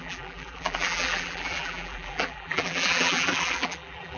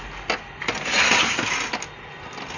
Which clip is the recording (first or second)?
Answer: second